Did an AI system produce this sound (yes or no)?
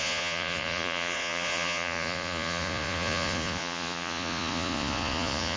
yes